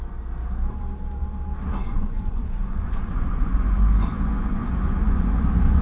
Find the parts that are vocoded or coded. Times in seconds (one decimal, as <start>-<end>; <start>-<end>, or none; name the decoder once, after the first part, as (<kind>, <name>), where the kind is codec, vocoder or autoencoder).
1.9-5.8 (vocoder, Vocos)